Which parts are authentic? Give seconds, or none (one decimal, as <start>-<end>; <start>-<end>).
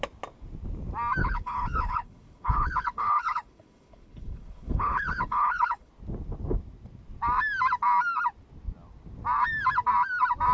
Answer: 0.0-1.2; 5.9-10.5